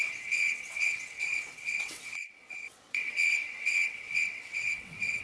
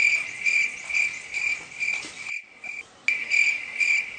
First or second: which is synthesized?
first